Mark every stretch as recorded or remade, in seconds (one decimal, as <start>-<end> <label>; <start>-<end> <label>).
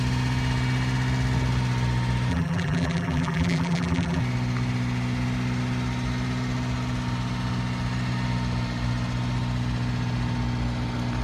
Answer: 0.0-2.3 recorded; 2.3-4.2 remade; 4.2-11.2 recorded